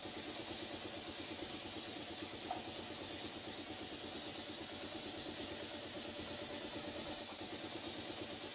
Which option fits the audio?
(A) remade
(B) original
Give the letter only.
B